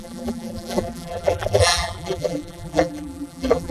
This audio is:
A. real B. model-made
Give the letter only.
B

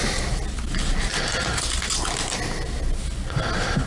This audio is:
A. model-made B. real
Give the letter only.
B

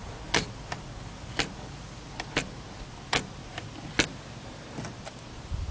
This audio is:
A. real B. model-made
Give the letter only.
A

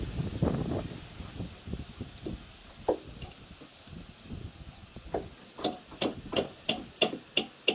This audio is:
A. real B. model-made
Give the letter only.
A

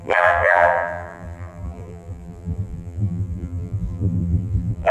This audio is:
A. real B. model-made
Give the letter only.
B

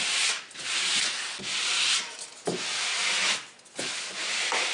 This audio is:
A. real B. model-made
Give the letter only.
A